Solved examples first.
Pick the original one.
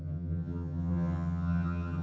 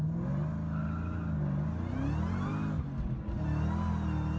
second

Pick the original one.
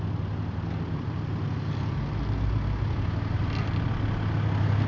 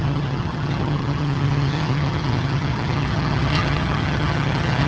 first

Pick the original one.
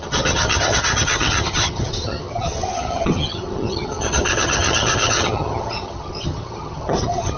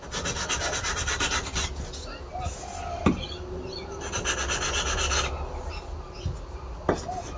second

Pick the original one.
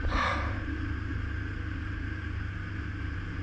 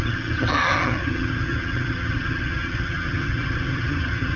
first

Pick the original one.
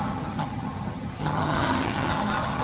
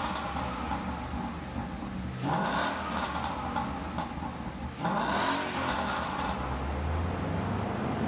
second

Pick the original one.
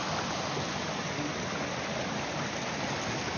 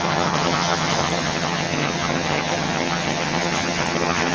first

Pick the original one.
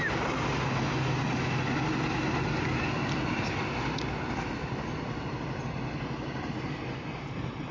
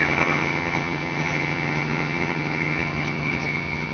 first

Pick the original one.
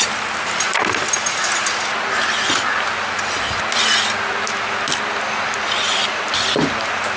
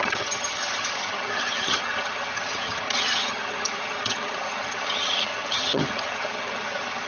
first